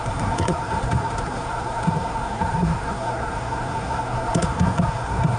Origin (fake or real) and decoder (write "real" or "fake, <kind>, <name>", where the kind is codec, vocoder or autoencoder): fake, codec, SNAC